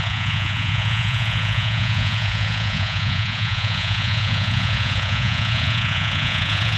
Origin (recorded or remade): remade